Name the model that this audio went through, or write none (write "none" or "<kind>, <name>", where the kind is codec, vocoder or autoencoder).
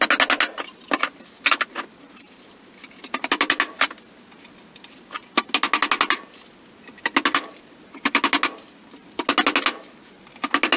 none